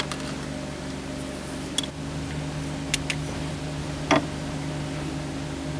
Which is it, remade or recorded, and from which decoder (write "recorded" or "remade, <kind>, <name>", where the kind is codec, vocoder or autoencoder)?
recorded